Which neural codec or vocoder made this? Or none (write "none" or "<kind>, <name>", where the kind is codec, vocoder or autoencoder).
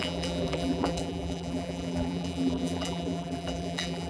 vocoder, BigVGAN v2